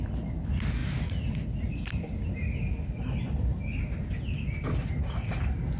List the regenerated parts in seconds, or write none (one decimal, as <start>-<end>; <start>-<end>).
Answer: none